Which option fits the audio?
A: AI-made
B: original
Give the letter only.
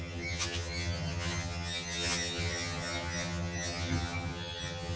A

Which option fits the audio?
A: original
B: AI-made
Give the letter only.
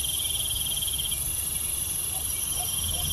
A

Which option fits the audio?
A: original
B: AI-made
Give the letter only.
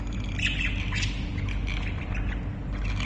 A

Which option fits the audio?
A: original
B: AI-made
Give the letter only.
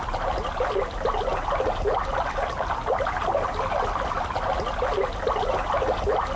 A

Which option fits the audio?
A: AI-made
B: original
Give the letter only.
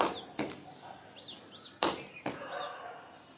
B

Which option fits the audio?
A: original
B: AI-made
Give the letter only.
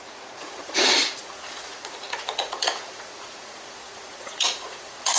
B